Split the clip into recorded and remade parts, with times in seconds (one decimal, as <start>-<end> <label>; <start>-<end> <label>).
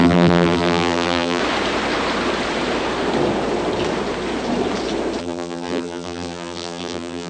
0.0-1.4 remade; 1.4-5.2 recorded; 5.2-7.3 remade